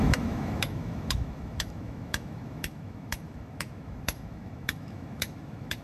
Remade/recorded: remade